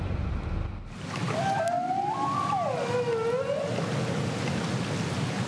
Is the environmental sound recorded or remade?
recorded